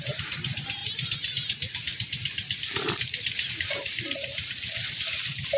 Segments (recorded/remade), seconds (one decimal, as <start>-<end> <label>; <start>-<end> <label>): 0.0-0.8 remade; 0.8-3.5 recorded; 3.5-4.3 remade; 4.3-4.9 recorded; 4.9-5.6 remade